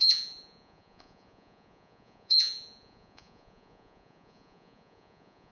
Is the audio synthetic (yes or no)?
yes